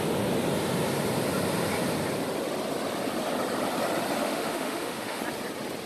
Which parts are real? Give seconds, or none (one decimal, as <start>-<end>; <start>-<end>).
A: 0.0-4.2; 5.2-5.9